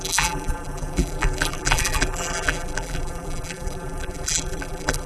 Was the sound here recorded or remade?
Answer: remade